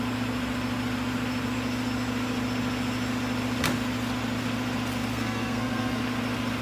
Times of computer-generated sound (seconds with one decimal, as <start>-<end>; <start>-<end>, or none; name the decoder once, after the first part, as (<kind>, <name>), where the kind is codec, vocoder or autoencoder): 5.1-6.0 (codec, SNAC)